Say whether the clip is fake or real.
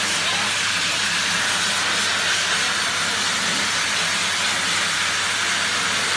real